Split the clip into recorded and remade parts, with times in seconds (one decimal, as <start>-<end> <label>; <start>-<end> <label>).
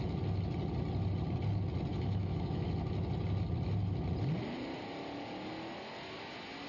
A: 0.0-1.9 recorded; 1.9-2.7 remade; 2.7-6.7 recorded